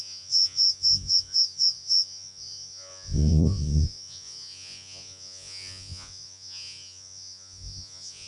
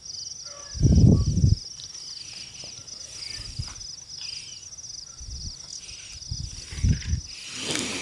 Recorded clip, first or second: second